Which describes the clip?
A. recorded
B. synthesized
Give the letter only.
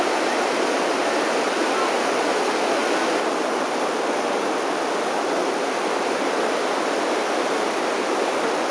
A